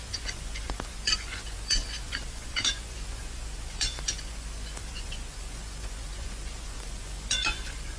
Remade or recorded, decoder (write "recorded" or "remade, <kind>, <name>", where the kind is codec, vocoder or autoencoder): remade, vocoder, Vocos